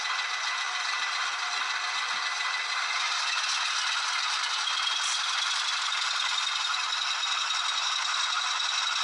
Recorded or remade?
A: recorded